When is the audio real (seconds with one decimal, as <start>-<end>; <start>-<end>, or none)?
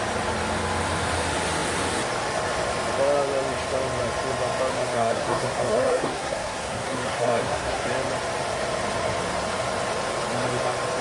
0.0-4.7; 7.9-11.0